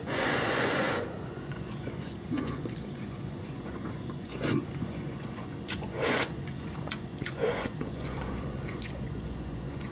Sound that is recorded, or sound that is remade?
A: remade